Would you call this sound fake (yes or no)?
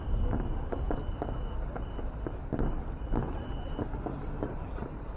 no